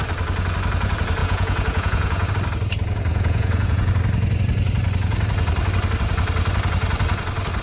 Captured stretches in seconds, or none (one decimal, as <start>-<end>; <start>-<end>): 0.0-1.2; 2.3-3.1; 3.9-7.6